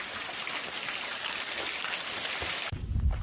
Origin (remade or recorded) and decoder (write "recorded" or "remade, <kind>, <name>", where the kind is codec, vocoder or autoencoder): recorded